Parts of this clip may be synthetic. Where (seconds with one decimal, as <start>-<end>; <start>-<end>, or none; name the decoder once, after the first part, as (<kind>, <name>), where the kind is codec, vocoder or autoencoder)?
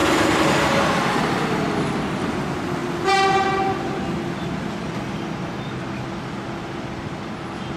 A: 0.0-1.5 (vocoder, BigVGAN v2)